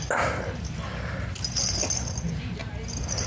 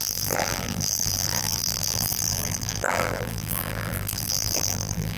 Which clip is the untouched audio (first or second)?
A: first